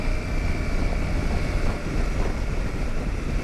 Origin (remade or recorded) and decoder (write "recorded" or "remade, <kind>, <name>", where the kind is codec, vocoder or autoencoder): recorded